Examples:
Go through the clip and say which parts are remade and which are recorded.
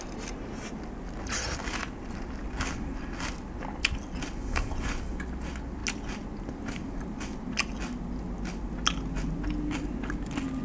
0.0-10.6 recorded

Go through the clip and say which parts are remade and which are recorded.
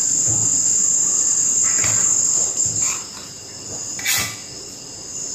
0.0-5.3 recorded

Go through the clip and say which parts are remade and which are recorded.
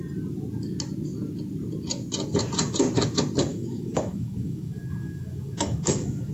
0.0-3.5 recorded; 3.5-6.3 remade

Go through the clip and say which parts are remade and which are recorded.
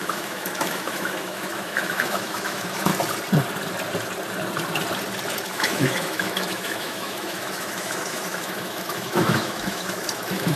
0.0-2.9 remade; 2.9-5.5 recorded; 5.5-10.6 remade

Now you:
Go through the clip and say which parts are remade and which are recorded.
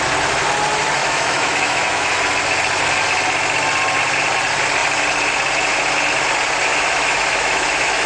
0.0-1.0 recorded; 1.0-2.1 remade; 2.1-6.7 recorded; 6.7-8.1 remade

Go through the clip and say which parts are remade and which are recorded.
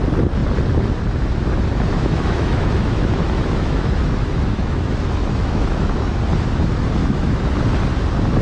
0.0-1.9 recorded; 1.9-6.2 remade; 6.2-7.0 recorded; 7.0-7.5 remade; 7.5-8.4 recorded